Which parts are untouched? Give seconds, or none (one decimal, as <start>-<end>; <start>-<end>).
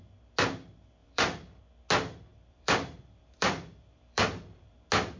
0.0-1.0; 1.6-2.3; 4.7-5.2